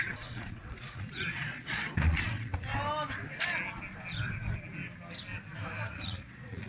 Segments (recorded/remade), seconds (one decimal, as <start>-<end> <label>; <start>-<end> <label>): 0.0-2.5 remade; 2.5-5.9 recorded; 5.9-6.7 remade